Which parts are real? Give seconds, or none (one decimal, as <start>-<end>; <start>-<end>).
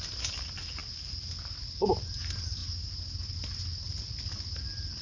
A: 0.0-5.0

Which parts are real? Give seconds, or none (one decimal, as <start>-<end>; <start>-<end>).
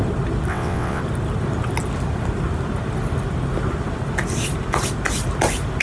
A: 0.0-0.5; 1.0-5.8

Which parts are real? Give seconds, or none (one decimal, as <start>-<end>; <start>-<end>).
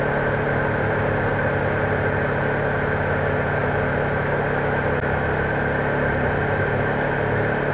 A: 0.0-7.7